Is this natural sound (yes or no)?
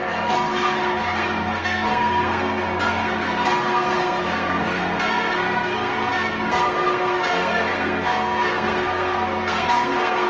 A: no